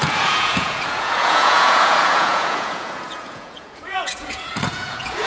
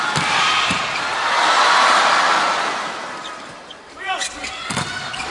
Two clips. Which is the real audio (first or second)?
second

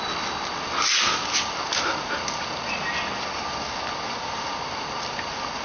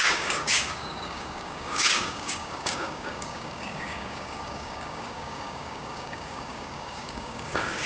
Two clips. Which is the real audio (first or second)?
first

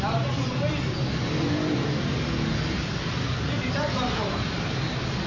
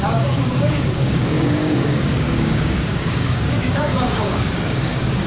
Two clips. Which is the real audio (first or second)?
first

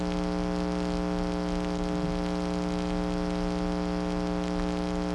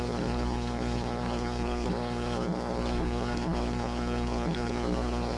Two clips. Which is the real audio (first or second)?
first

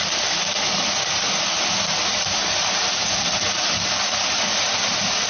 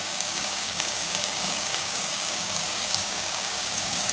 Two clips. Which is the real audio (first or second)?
first